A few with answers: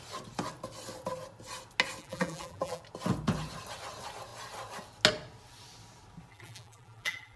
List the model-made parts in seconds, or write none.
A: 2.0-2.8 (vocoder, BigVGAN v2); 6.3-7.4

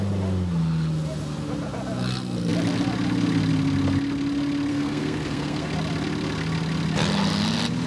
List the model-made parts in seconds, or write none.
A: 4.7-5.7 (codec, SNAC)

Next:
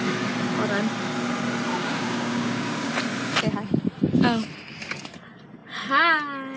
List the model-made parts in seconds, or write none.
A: 1.7-2.9 (codec, DAC)